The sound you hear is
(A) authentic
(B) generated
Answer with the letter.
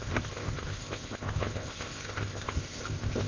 B